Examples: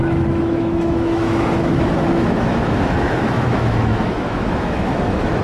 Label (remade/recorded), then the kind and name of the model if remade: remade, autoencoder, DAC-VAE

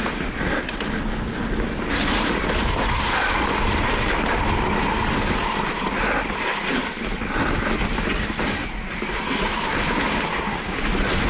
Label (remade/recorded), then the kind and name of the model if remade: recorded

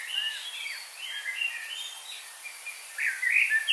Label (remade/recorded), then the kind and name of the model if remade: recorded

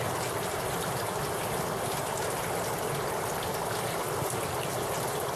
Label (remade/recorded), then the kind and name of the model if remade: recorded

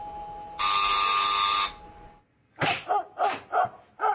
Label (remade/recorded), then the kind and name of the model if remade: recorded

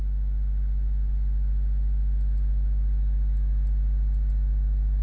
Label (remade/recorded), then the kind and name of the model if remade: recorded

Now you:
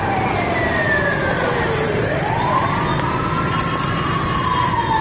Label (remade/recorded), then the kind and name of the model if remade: recorded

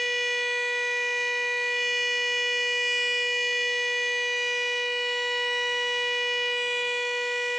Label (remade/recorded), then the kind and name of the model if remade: recorded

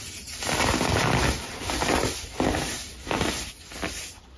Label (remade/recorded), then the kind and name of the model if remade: recorded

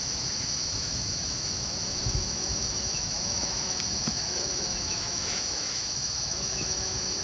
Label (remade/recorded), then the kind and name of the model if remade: remade, autoencoder, DAC-VAE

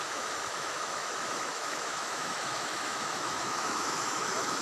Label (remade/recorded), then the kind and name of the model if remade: remade, autoencoder, DAC-VAE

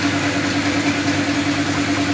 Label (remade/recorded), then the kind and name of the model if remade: recorded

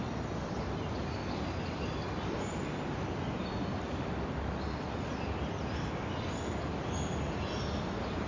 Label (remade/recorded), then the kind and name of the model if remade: recorded